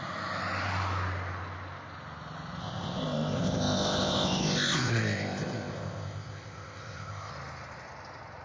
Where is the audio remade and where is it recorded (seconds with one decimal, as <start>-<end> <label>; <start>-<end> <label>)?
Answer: 0.0-2.6 recorded; 2.6-7.3 remade; 7.3-8.4 recorded